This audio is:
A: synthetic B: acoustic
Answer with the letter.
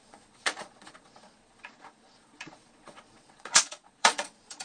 A